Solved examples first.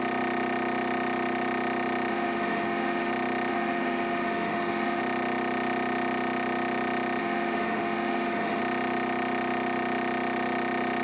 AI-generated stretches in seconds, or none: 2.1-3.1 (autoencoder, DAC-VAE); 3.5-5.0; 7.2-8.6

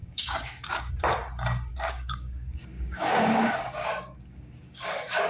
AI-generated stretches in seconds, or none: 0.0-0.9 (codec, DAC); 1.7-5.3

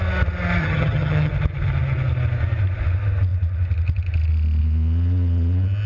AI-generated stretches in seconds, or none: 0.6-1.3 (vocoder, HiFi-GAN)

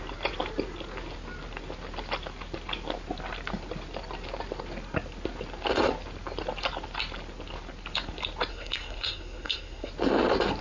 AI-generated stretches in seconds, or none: 8.5-9.9 (codec, SNAC)